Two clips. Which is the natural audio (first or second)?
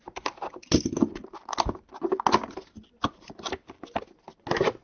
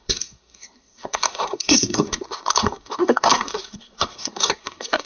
first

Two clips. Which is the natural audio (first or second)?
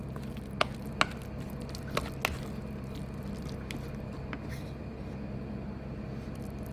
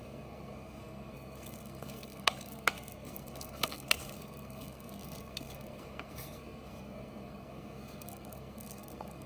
first